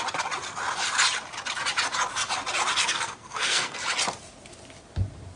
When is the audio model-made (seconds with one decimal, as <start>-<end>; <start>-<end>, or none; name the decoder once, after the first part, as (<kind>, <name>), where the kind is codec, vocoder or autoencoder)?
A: 2.8-3.8 (codec, SNAC)